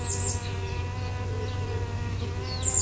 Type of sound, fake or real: real